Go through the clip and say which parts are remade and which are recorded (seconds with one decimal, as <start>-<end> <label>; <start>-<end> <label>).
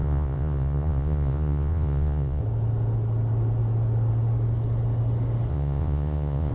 0.0-2.4 remade; 2.4-5.5 recorded; 5.5-6.5 remade